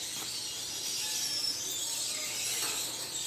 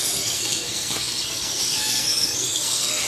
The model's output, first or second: second